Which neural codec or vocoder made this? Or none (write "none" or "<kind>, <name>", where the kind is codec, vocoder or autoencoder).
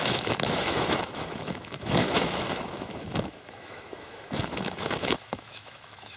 autoencoder, DAC-VAE